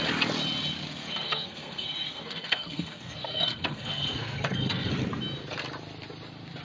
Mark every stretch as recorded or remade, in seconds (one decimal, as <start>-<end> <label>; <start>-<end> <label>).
0.0-0.9 recorded; 0.9-4.9 remade; 4.9-6.6 recorded